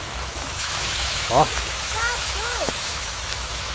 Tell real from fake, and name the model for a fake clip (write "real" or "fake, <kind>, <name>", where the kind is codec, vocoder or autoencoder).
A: fake, autoencoder, DAC-VAE